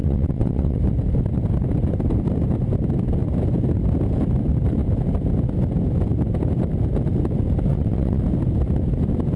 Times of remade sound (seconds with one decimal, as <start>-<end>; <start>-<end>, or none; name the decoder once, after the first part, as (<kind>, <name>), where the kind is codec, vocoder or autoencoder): 0.0-0.8 (vocoder, WaveNeXt); 7.7-8.2